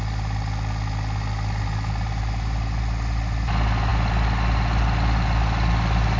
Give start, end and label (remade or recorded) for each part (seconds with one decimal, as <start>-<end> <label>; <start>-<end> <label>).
0.0-6.2 recorded